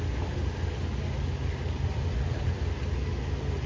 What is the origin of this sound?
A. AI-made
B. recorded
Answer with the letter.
B